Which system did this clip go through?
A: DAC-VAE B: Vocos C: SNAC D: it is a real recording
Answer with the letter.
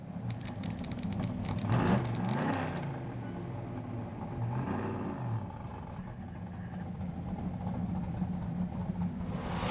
D